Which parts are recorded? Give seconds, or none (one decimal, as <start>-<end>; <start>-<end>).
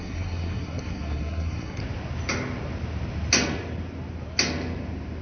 1.8-5.2